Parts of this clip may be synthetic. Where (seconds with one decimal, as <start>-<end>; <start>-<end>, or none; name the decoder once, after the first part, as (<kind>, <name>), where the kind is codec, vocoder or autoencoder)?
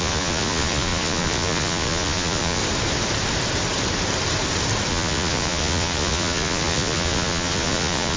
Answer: 0.0-2.6 (vocoder, Vocos); 4.9-8.2